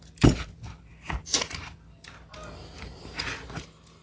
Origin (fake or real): fake